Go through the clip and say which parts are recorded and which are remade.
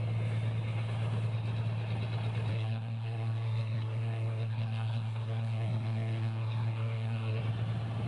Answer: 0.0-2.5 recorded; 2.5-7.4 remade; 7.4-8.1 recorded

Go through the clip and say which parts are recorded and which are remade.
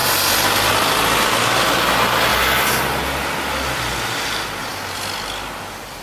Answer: 0.0-6.0 recorded